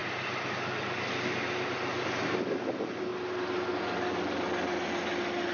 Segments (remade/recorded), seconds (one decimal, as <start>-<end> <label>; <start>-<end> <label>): 0.0-5.5 recorded